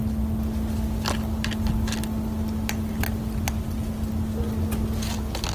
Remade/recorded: recorded